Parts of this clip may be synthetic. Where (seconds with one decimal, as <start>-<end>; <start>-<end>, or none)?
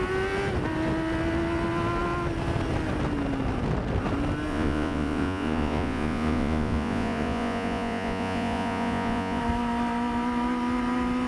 4.5-9.4